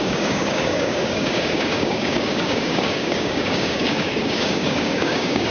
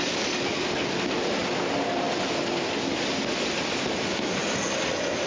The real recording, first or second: second